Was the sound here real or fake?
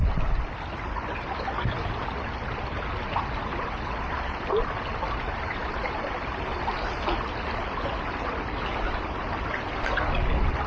real